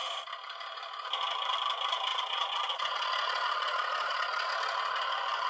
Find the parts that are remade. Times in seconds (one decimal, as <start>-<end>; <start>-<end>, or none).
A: 2.1-4.5